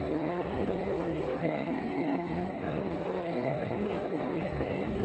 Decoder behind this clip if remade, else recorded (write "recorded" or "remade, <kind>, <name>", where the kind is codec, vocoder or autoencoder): remade, codec, SNAC